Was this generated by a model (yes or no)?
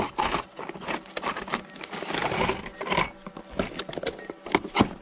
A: no